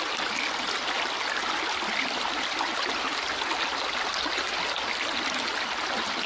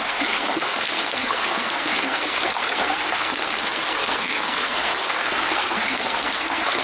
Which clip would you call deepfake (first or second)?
second